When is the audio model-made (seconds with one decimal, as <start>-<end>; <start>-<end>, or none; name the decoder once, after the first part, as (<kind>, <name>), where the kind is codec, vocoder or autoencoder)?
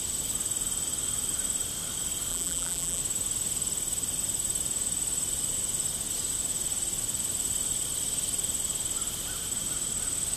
2.3-3.0 (vocoder, BigVGAN v2)